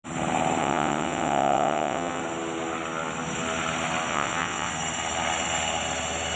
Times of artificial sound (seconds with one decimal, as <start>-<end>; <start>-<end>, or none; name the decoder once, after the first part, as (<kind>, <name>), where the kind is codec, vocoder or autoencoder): 0.6-2.2 (vocoder, WaveNeXt); 4.1-4.7